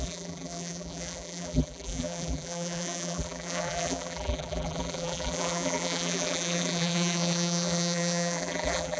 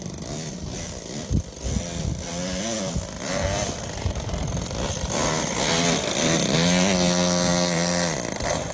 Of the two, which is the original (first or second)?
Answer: second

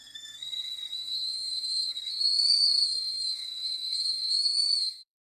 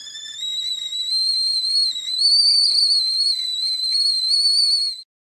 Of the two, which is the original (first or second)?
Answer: second